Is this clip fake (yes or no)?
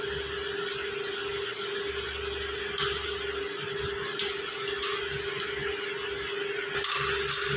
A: no